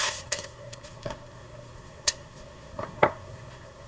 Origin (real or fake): fake